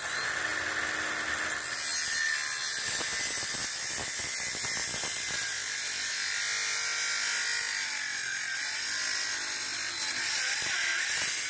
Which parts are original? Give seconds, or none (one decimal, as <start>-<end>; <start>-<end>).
0.0-11.5